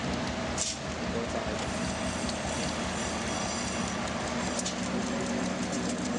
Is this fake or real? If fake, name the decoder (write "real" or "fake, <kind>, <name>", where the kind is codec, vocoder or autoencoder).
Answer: real